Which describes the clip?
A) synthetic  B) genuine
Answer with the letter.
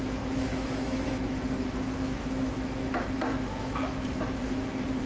A